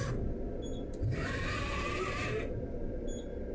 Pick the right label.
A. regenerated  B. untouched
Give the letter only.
B